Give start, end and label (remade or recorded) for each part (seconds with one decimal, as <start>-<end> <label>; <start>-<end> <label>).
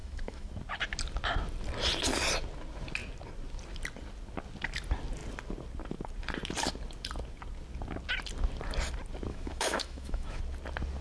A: 0.0-0.5 remade; 0.5-9.3 recorded; 9.3-10.4 remade; 10.4-11.0 recorded